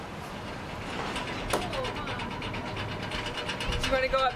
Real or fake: real